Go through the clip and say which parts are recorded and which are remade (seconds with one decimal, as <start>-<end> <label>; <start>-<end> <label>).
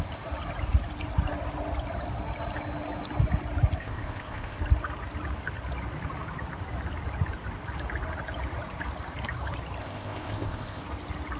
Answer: 0.0-3.8 recorded; 3.8-4.6 remade; 4.6-9.8 recorded; 9.8-10.8 remade; 10.8-11.4 recorded